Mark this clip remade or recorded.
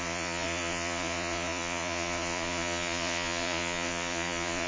remade